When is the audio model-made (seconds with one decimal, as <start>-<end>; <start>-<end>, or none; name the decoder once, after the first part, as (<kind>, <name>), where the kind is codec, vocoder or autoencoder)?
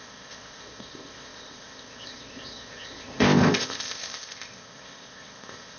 0.0-5.8 (codec, ZipCodec)